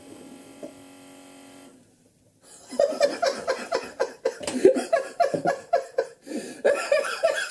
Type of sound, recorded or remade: remade